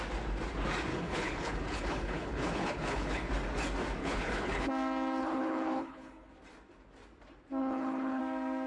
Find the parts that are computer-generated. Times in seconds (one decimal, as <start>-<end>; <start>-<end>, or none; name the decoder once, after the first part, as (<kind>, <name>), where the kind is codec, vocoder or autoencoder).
0.9-3.3 (codec, HILCodec); 4.0-4.7; 5.2-6.3; 7.6-8.2